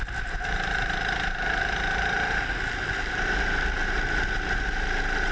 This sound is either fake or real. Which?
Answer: real